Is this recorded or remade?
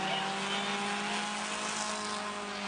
recorded